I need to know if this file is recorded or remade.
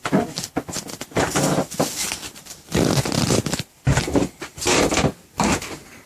remade